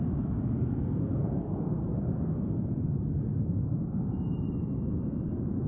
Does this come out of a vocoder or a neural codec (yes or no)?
no